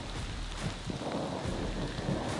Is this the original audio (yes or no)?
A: yes